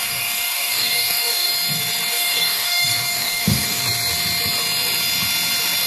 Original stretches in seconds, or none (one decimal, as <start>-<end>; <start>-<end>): 1.5-2.1; 3.8-5.9